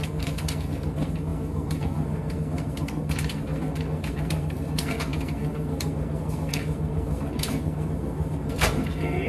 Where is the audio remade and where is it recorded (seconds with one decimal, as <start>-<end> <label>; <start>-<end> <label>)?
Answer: 0.0-9.3 remade